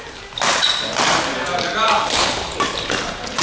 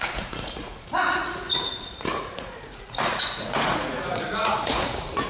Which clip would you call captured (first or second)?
first